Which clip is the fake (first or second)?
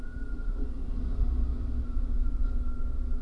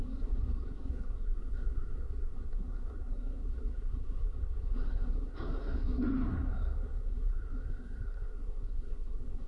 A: second